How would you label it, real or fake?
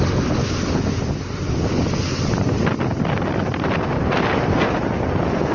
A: real